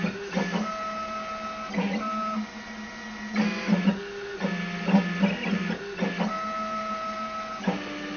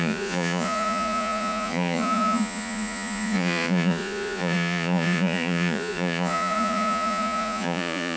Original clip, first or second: first